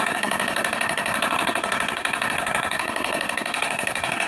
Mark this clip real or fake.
fake